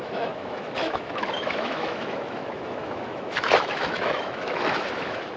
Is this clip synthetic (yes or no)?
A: yes